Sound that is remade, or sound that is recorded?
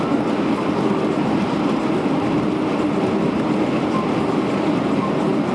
recorded